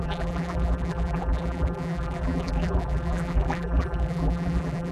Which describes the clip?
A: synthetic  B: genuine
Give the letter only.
A